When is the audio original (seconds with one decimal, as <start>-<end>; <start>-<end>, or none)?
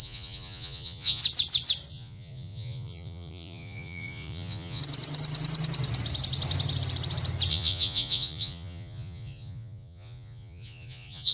1.2-1.9; 4.8-7.5